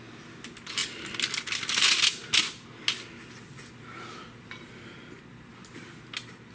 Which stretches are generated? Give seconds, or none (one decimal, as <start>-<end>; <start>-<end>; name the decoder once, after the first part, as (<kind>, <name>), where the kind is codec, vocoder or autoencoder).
none